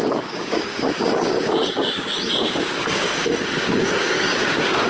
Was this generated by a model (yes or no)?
yes